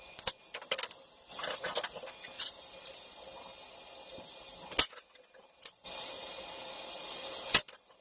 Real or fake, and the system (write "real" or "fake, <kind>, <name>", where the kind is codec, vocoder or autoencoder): real